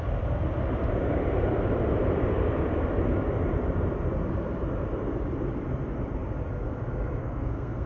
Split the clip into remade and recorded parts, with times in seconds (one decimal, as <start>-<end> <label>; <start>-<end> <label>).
0.0-7.2 recorded; 7.2-7.9 remade